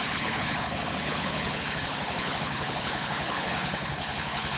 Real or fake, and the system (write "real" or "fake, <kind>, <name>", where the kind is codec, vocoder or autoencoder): fake, codec, HILCodec